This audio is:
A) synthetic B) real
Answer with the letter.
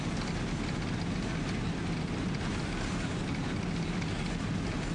B